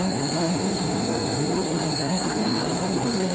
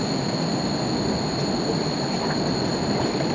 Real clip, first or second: second